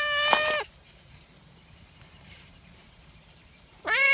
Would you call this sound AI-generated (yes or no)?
yes